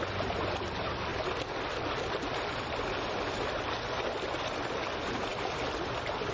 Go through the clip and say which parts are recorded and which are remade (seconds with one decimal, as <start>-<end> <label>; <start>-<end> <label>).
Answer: 0.0-6.3 recorded